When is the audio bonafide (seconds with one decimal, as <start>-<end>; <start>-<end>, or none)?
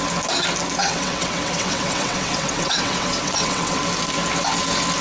0.0-0.8; 3.8-5.0